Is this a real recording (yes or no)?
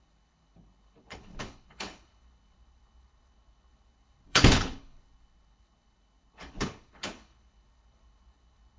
no